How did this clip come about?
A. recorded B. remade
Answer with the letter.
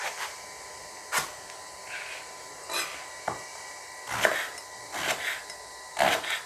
A